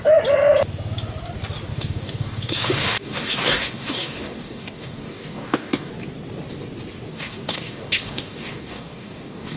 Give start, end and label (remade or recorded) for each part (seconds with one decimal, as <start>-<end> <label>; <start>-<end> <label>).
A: 0.0-1.7 recorded; 1.7-5.9 remade; 5.9-7.1 recorded; 7.1-9.6 remade

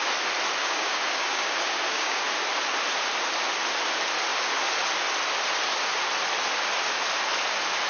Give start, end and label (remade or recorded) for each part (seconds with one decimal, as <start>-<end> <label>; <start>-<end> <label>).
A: 0.0-0.6 recorded; 0.6-2.2 remade; 2.2-7.9 recorded

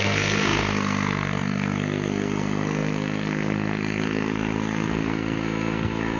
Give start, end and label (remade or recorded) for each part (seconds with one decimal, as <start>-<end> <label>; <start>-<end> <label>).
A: 0.0-6.2 remade